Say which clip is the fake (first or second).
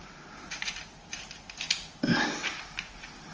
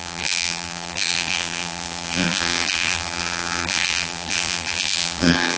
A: second